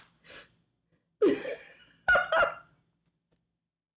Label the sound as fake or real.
real